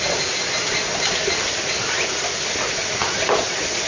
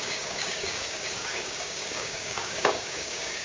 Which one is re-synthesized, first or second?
second